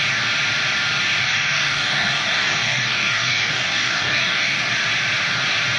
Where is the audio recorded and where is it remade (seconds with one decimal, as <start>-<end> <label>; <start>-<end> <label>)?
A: 0.0-1.2 recorded; 1.2-4.7 remade; 4.7-5.8 recorded